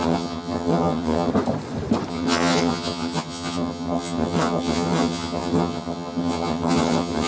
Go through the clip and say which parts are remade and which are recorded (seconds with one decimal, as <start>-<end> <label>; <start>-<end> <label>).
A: 0.0-1.3 remade; 1.3-2.1 recorded; 2.1-7.3 remade